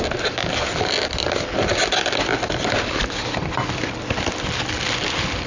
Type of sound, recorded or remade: recorded